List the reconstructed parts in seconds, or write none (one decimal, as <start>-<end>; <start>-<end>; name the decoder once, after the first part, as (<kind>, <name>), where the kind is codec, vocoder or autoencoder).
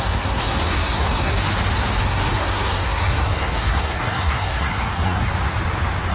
0.0-1.4 (codec, SNAC); 2.0-5.3